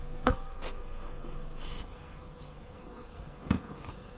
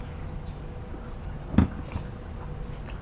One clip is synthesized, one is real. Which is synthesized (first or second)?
first